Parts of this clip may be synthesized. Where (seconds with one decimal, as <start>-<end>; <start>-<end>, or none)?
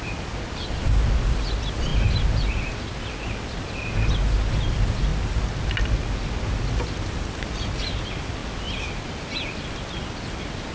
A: none